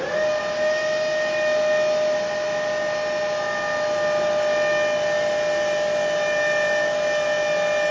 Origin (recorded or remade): recorded